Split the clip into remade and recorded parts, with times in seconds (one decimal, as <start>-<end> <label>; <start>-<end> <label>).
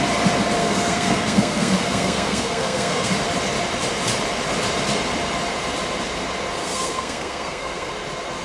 0.0-0.6 recorded; 0.6-3.1 remade; 3.1-6.6 recorded; 6.6-7.9 remade; 7.9-8.4 recorded